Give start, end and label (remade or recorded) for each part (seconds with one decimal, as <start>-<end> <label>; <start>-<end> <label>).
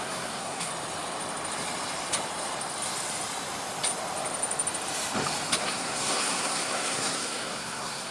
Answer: 0.0-0.7 remade; 0.7-5.6 recorded; 5.6-8.1 remade